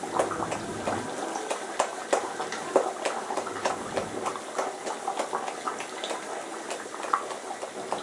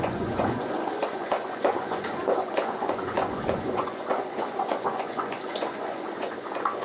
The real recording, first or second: first